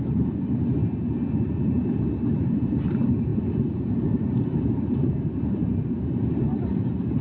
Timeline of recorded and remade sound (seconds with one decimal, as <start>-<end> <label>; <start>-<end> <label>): 0.0-0.8 remade; 0.8-2.3 recorded; 2.3-7.2 remade